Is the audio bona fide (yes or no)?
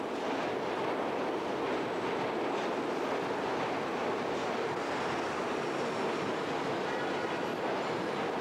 yes